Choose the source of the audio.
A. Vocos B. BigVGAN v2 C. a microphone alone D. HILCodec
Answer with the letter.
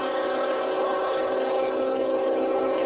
D